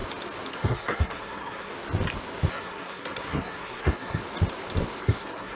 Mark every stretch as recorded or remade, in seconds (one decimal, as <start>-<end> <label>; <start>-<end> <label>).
0.0-0.5 recorded; 0.5-1.7 remade; 1.7-2.5 recorded; 2.5-4.2 remade; 4.2-5.0 recorded; 5.0-5.5 remade